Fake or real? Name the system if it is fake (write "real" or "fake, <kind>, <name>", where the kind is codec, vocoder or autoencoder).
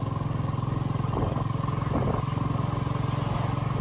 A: real